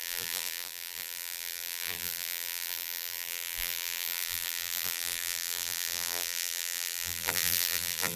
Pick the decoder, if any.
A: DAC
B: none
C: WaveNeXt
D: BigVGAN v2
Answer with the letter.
D